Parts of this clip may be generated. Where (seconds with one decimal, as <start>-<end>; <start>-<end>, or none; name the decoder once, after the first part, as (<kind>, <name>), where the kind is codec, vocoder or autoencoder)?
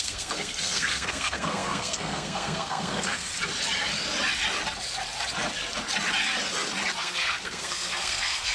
0.0-3.3 (codec, SNAC); 7.0-8.5